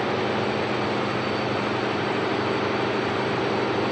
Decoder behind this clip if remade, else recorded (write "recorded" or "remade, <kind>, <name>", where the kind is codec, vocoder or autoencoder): recorded